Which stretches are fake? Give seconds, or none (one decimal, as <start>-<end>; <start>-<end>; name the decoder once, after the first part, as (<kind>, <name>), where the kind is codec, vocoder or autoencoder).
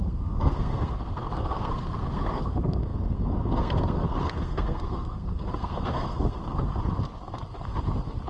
0.0-6.7 (codec, SNAC)